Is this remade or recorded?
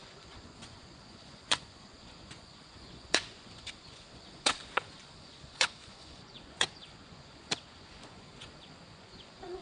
remade